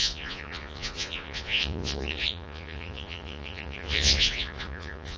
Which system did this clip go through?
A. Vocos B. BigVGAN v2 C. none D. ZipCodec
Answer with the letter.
A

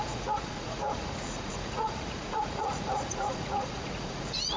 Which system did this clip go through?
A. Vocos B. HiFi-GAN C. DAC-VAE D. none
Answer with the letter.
A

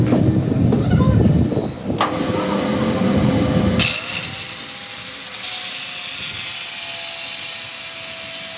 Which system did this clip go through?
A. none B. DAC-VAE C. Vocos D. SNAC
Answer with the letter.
A